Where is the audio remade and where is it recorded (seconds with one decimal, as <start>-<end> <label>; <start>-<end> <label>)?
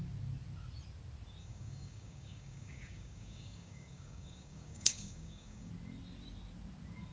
0.0-1.4 recorded; 1.4-5.7 remade; 5.7-7.1 recorded